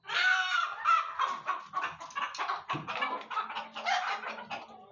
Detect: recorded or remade recorded